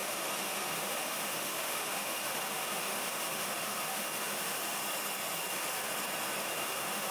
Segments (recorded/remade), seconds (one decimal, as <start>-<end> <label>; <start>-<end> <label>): 0.0-4.8 remade; 4.8-5.5 recorded; 5.5-5.9 remade; 5.9-6.4 recorded; 6.4-7.1 remade